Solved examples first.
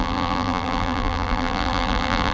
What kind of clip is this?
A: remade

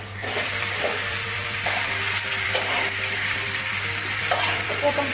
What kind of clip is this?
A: remade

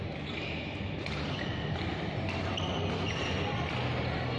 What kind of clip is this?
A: recorded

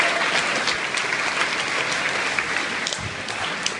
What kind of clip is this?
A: recorded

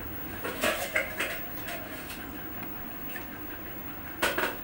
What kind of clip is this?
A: remade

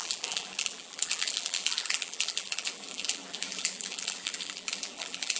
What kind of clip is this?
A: remade